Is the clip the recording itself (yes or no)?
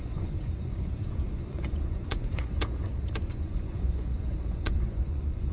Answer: no